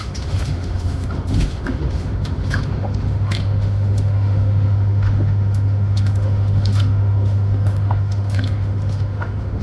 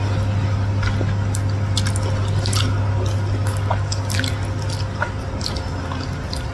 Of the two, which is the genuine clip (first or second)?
second